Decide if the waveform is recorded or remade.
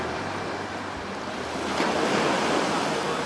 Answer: recorded